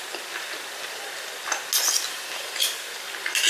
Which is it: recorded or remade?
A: recorded